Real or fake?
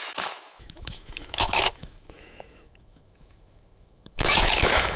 fake